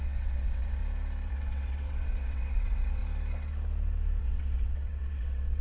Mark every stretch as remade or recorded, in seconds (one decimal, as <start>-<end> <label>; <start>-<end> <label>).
0.0-0.8 remade; 0.8-1.3 recorded; 1.3-3.0 remade; 3.0-4.2 recorded; 4.2-5.6 remade